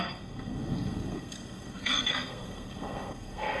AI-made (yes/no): yes